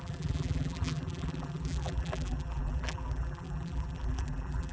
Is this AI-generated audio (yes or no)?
yes